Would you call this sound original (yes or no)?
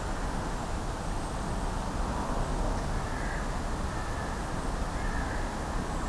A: yes